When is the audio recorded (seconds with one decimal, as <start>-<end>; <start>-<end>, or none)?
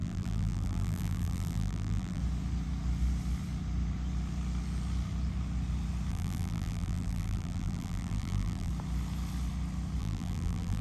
2.2-6.1; 8.7-10.0